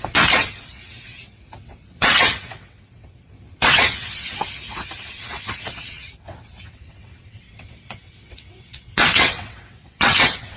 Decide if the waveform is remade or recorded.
remade